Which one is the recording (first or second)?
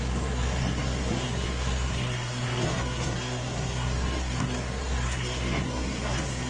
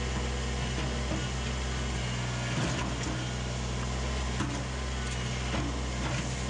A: second